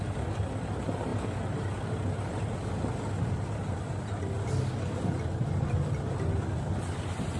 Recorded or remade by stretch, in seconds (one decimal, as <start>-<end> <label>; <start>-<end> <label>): 0.0-7.4 recorded